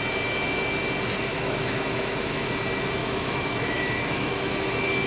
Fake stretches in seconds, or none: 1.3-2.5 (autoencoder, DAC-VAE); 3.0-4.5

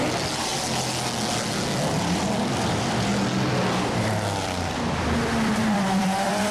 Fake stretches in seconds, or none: 0.0-0.5 (vocoder, BigVGAN v2); 1.9-3.1; 4.0-6.5

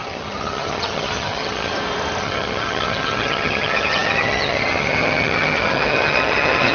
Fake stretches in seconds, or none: 0.0-1.7 (vocoder, HiFi-GAN); 2.2-6.7